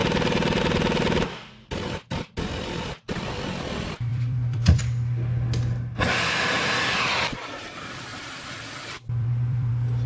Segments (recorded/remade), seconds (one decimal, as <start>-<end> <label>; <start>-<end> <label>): 0.0-0.6 remade; 0.6-4.1 recorded; 4.1-4.8 remade; 4.8-8.1 recorded; 8.1-9.7 remade; 9.7-10.1 recorded